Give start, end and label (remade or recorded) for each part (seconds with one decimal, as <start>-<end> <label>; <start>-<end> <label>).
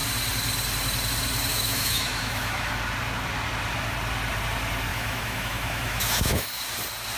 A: 0.0-1.5 recorded; 1.5-2.7 remade; 2.7-4.9 recorded; 4.9-6.6 remade; 6.6-7.2 recorded